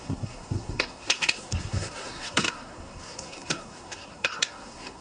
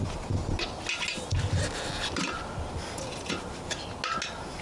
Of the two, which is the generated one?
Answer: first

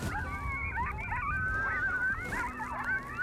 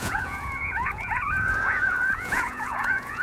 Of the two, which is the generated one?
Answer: second